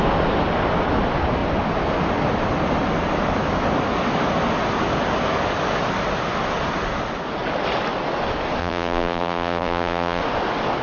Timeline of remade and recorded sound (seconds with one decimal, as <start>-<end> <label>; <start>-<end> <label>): 0.0-8.6 recorded; 8.6-10.2 remade; 10.2-10.8 recorded